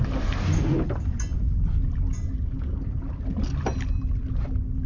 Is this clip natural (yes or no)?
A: yes